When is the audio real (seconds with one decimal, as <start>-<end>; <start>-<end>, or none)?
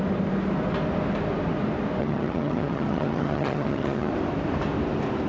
0.0-2.0; 4.1-5.3